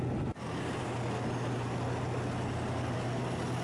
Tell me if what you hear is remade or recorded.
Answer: recorded